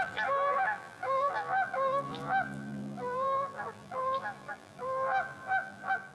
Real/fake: fake